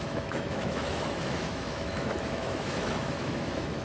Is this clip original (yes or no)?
no